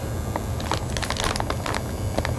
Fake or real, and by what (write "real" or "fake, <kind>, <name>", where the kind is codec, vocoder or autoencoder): real